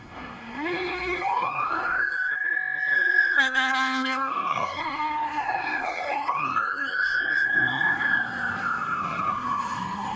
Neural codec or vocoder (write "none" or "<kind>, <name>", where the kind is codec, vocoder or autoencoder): codec, SNAC